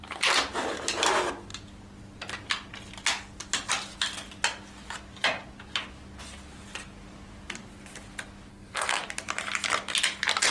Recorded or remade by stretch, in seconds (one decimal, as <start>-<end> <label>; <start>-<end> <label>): 0.0-8.5 recorded; 8.5-9.0 remade; 9.0-10.5 recorded